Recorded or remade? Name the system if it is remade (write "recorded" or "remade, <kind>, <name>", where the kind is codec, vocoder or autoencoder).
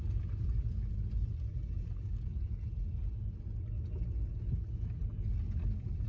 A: recorded